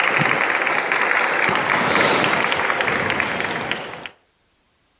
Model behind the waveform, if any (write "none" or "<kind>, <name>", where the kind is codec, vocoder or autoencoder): none